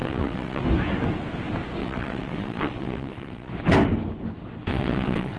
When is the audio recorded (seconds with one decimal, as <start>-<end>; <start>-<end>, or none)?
0.6-1.8; 3.5-4.7